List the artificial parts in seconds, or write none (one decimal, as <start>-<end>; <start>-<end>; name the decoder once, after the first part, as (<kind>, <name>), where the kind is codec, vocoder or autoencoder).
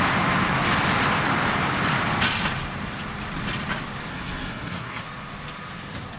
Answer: 4.1-5.0 (codec, SNAC)